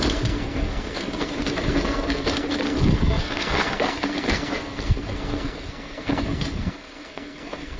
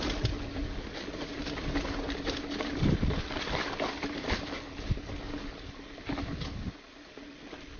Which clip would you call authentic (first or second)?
second